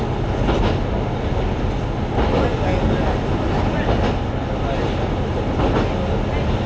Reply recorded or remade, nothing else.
recorded